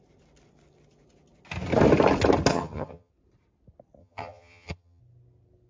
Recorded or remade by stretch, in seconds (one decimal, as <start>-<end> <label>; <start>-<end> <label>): 0.0-2.5 recorded; 2.5-3.1 remade; 3.1-4.0 recorded; 4.0-5.0 remade; 5.0-5.7 recorded